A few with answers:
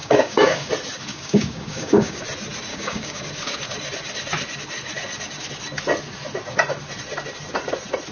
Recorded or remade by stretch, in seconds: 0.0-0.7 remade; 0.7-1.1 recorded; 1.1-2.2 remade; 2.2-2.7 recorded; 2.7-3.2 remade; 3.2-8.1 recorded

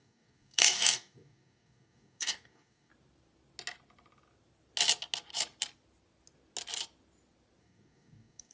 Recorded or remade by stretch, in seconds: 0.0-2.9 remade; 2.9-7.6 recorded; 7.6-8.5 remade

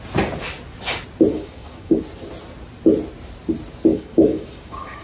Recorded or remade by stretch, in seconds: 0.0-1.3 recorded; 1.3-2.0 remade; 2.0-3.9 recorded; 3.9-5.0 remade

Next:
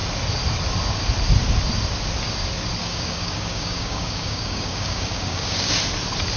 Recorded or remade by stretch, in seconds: 0.0-2.8 recorded; 2.8-5.7 remade; 5.7-6.4 recorded

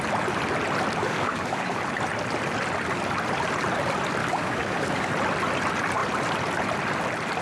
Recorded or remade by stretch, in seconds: 0.0-1.0 recorded; 1.0-1.8 remade; 1.8-4.2 recorded; 4.2-5.1 remade; 5.1-7.4 recorded

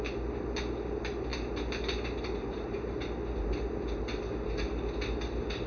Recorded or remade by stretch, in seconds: 0.0-5.7 recorded